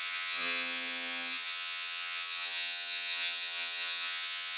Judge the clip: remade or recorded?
remade